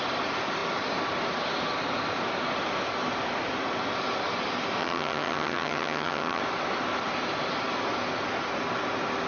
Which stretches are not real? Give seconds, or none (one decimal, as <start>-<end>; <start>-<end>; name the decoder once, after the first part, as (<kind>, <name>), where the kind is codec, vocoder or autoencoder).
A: 4.8-6.4 (vocoder, HiFi-GAN)